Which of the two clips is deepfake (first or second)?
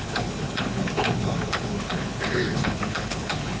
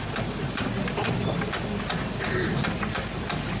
first